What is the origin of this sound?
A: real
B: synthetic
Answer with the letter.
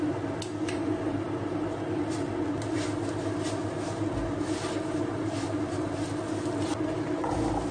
A